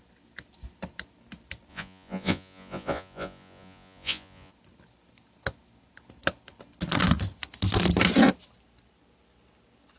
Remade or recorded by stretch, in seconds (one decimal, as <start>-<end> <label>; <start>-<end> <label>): 0.0-1.7 recorded; 1.7-4.5 remade; 4.5-10.0 recorded